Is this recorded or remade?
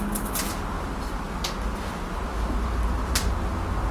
recorded